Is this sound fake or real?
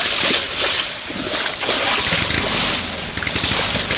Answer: real